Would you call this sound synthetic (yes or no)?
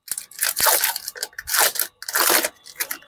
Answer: no